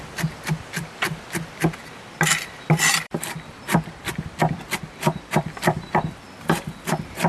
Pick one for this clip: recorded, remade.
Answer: remade